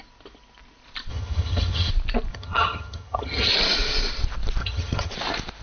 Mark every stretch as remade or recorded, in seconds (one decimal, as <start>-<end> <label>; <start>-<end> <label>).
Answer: 0.0-1.1 recorded; 1.1-1.9 remade; 1.9-2.3 recorded; 2.3-3.5 remade; 3.5-4.6 recorded; 4.6-5.1 remade; 5.1-5.6 recorded